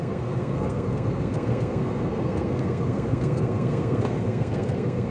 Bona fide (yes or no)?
no